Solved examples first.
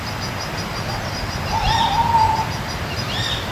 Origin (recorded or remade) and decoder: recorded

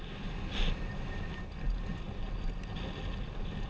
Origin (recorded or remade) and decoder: recorded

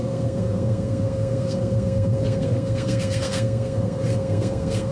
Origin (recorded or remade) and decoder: remade, codec, SNAC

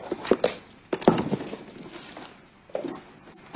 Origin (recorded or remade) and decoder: recorded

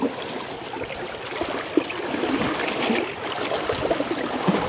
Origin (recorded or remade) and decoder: remade, vocoder, BigVGAN v2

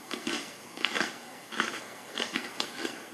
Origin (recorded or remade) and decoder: remade, codec, SNAC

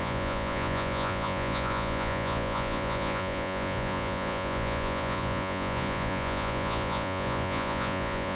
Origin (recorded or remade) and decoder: remade, vocoder, Vocos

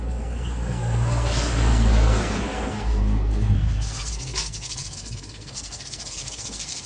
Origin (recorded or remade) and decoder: remade, codec, SNAC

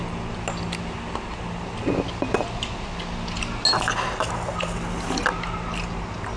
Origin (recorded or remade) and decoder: recorded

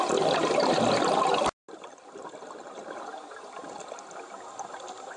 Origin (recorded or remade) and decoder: recorded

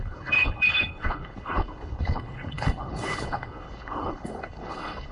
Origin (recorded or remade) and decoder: remade, codec, HILCodec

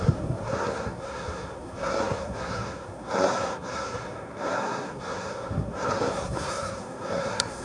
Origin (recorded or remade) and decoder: remade, codec, SNAC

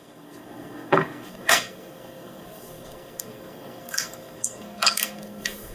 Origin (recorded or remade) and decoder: remade, codec, SNAC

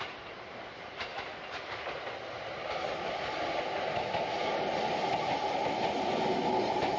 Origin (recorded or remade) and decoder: recorded